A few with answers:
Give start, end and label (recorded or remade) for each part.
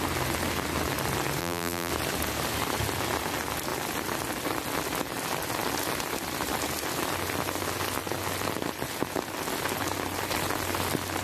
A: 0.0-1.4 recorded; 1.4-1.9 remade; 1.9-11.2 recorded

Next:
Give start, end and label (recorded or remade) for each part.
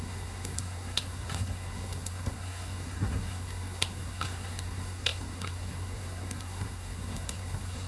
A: 0.0-7.9 remade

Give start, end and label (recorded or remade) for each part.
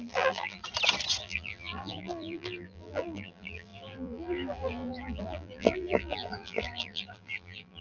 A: 0.0-0.6 remade; 0.6-1.2 recorded; 1.2-7.8 remade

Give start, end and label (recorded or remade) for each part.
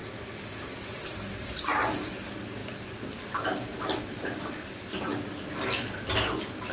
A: 0.0-6.7 recorded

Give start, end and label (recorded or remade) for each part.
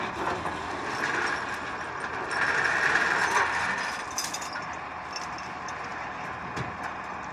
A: 0.0-7.3 recorded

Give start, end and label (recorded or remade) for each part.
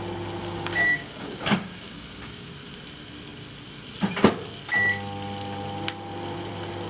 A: 0.0-0.4 recorded; 0.4-2.5 remade; 2.5-6.9 recorded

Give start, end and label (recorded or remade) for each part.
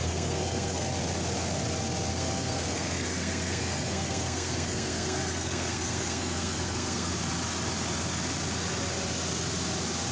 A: 0.0-0.9 remade; 0.9-2.1 recorded; 2.1-7.1 remade; 7.1-10.1 recorded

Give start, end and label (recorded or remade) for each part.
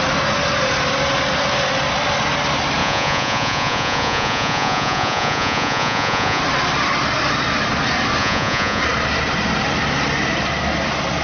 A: 0.0-2.8 recorded; 2.8-6.4 remade; 6.4-8.2 recorded; 8.2-8.8 remade; 8.8-11.2 recorded